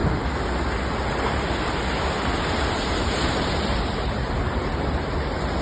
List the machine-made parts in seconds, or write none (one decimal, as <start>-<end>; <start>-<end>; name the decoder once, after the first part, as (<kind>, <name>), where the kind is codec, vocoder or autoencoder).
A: 2.5-5.6 (vocoder, BigVGAN v2)